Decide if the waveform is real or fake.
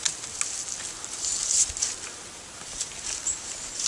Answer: real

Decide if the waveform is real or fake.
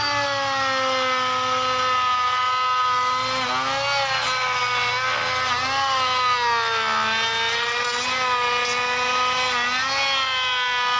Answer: real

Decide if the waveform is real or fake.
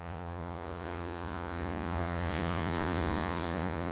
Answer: fake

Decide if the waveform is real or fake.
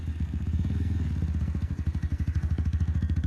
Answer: fake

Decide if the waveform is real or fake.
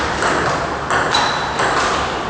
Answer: real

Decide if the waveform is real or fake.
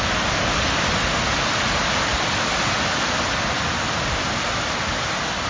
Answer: real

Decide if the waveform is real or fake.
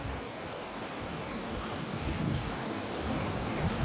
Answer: fake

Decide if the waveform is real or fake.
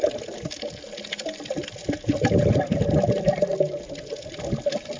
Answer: real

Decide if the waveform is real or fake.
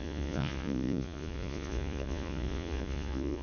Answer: fake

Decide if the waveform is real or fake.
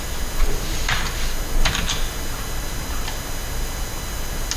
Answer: real